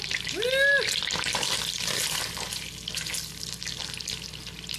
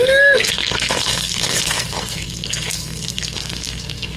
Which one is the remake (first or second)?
second